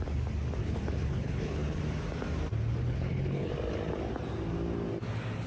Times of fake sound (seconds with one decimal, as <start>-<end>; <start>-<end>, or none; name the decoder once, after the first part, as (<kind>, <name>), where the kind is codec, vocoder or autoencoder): 0.6-1.8 (codec, HILCodec); 2.8-3.5